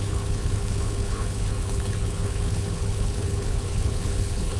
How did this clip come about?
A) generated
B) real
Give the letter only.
A